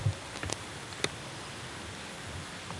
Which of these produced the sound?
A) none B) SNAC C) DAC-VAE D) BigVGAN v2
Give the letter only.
A